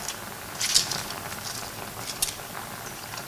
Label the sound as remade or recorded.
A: recorded